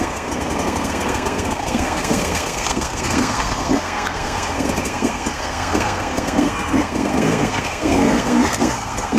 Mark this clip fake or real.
fake